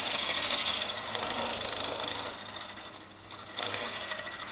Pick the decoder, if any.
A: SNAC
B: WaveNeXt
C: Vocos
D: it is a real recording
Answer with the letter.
A